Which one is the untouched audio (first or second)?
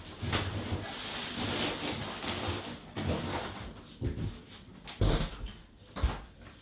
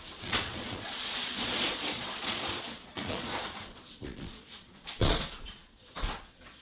first